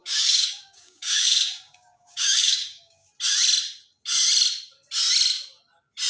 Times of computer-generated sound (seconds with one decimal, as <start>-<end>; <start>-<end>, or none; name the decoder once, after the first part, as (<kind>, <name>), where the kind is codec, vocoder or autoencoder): 0.0-3.1 (codec, DAC)